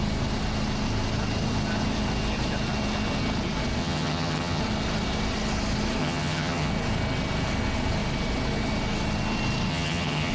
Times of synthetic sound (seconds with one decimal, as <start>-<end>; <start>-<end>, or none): 3.8-4.6; 6.0-6.7; 9.7-10.3